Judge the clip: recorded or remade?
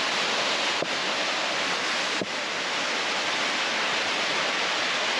recorded